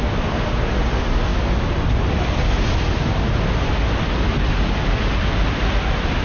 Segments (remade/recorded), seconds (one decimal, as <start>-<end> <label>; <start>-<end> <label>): 0.0-6.2 recorded